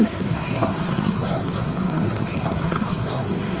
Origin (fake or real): fake